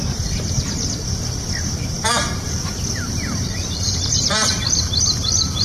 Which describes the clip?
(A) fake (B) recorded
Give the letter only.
A